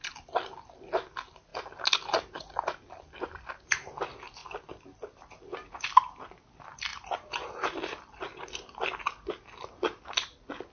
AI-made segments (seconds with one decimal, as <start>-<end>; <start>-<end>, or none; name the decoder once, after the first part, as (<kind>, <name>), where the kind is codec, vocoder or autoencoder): none